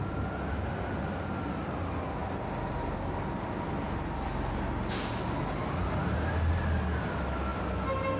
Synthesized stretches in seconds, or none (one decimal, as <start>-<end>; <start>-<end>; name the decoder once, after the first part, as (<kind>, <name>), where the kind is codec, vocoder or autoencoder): none